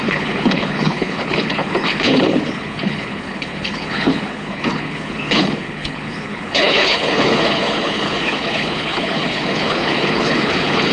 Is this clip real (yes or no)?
no